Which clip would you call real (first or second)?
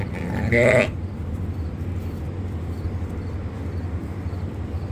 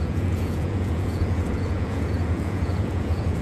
first